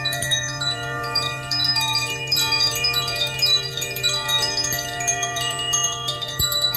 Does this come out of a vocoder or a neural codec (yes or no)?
yes